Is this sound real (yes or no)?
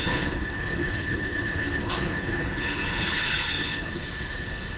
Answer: no